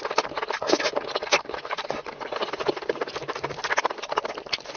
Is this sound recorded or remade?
recorded